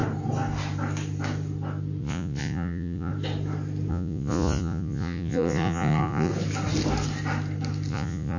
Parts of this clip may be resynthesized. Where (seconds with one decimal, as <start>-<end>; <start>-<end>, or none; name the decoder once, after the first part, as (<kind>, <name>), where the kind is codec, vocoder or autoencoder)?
2.0-3.1 (vocoder, Vocos); 3.9-6.3; 7.9-8.4